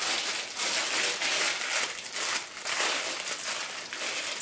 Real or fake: real